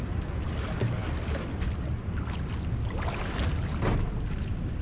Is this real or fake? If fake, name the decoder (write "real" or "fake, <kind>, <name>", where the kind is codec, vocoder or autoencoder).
real